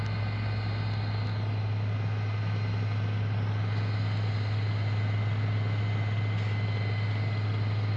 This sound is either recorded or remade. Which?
recorded